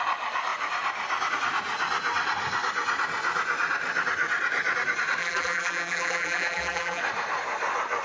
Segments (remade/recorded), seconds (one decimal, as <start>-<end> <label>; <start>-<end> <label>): 0.0-5.2 recorded; 5.2-7.0 remade; 7.0-8.0 recorded

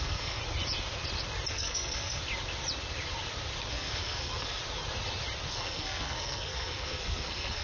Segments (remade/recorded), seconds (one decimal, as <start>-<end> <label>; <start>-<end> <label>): 0.0-0.4 remade; 0.4-1.5 recorded; 1.5-2.2 remade; 2.2-3.7 recorded; 3.7-4.6 remade; 4.6-5.5 recorded; 5.5-7.6 remade

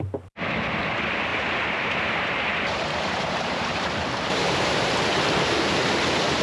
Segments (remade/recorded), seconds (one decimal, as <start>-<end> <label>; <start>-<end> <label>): 0.0-1.3 recorded; 1.3-4.9 remade; 4.9-6.4 recorded

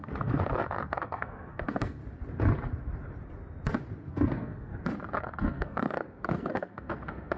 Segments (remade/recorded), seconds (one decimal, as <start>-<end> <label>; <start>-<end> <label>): 0.0-2.0 remade; 2.0-4.1 recorded; 4.1-4.7 remade; 4.7-5.2 recorded; 5.2-7.4 remade